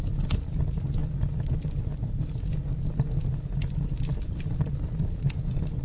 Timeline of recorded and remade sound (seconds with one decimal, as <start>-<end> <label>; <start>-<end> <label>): 0.0-5.8 recorded